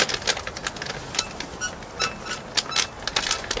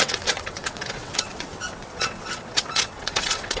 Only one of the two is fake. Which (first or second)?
second